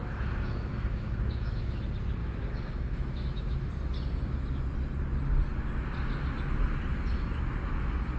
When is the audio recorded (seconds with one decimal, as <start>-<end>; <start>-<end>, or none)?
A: 1.8-2.2; 3.7-8.2